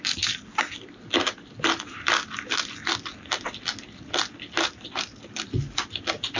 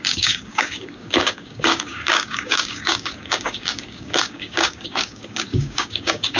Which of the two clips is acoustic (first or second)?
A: first